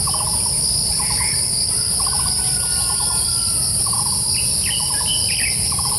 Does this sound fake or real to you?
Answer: real